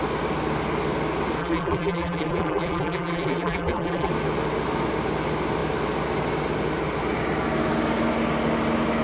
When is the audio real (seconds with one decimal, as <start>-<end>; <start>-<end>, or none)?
0.0-1.4; 4.1-9.0